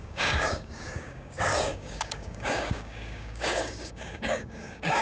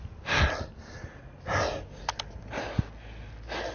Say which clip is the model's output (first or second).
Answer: first